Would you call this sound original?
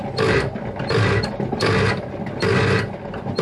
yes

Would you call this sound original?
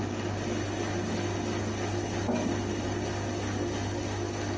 yes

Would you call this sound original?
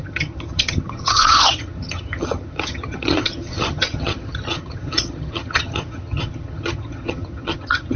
no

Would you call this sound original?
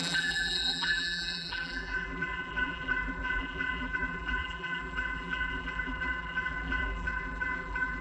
no